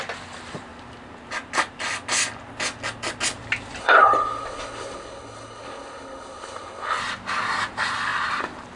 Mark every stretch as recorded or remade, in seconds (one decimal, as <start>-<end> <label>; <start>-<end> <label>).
0.0-3.8 recorded; 3.8-7.0 remade; 7.0-8.8 recorded

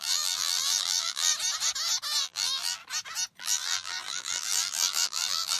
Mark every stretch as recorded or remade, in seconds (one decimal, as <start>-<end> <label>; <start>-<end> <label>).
0.0-1.3 remade; 1.3-2.2 recorded; 2.2-2.8 remade; 2.8-3.4 recorded; 3.4-5.6 remade

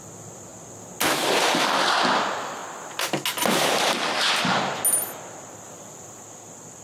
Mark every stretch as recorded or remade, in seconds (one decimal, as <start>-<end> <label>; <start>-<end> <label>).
0.0-0.5 remade; 0.5-1.9 recorded; 1.9-2.6 remade; 2.6-5.5 recorded; 5.5-6.8 remade

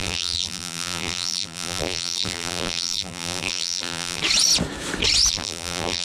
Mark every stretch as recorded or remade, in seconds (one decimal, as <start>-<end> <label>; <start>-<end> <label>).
0.0-4.2 remade; 4.2-5.3 recorded; 5.3-6.0 remade

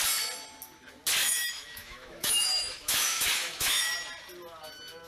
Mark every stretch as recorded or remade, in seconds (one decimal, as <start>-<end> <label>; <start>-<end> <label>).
0.0-1.2 recorded; 1.2-3.9 remade; 3.9-5.1 recorded